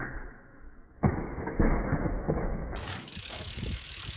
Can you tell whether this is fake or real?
fake